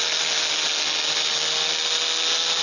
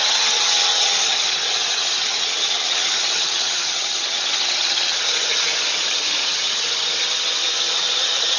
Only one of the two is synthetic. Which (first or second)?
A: second